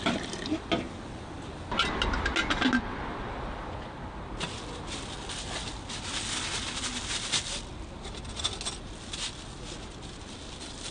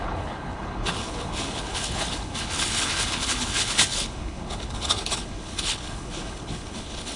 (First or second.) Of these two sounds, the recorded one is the first